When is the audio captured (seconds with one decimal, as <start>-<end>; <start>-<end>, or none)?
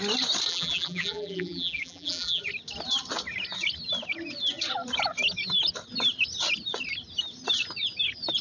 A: 0.0-0.5; 2.4-8.4